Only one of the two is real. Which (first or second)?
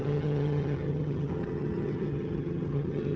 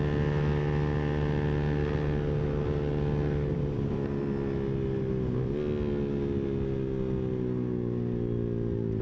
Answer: second